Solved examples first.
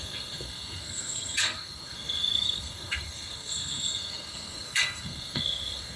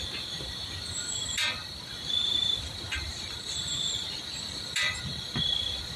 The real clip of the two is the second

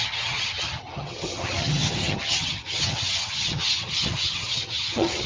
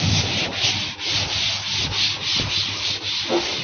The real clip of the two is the second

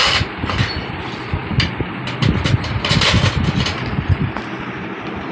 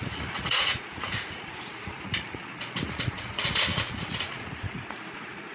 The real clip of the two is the first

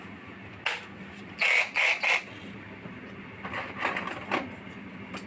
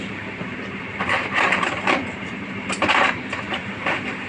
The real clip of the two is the first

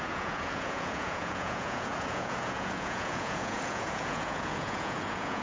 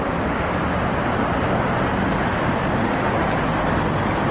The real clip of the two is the second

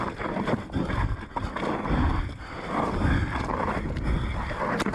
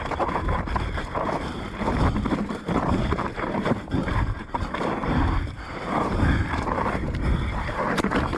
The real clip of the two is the first